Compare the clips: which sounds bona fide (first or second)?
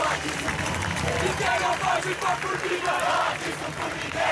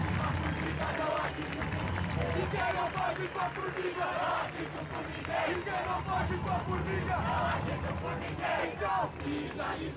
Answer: second